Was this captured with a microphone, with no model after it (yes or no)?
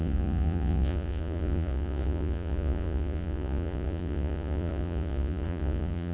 no